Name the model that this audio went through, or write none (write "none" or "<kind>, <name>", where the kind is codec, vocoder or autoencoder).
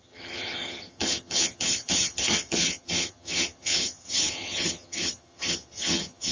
vocoder, HiFi-GAN